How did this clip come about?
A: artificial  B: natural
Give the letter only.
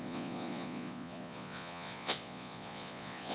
A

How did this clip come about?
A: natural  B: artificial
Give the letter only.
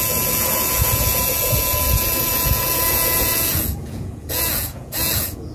B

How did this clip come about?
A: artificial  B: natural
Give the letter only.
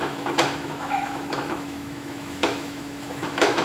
A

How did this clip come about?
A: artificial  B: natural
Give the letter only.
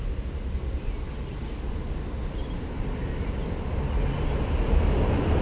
B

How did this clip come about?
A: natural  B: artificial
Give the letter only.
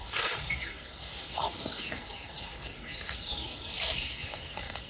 B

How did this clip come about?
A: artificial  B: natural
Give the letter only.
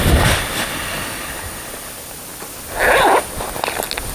B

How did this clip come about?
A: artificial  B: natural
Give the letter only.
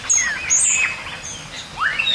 B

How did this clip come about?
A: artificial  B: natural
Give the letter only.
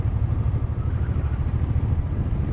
B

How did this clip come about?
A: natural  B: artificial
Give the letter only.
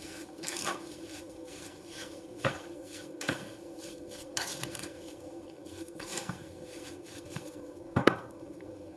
B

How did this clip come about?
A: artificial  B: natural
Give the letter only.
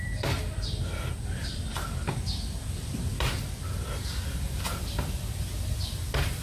A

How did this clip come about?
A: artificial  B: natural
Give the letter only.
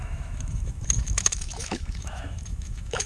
A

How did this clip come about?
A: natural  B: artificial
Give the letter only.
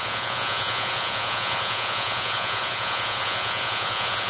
B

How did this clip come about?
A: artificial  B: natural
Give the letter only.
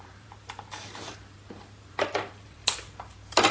A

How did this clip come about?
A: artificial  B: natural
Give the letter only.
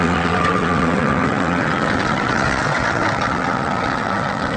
A